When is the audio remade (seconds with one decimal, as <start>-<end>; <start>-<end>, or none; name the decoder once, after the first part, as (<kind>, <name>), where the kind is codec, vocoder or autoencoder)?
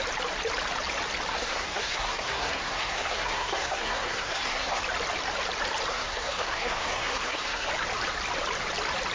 1.3-4.8 (codec, SNAC); 5.9-7.7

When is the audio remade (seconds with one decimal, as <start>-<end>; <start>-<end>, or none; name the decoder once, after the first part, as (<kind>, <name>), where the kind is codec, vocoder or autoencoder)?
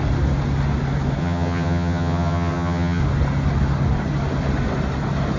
1.2-3.0 (vocoder, HiFi-GAN)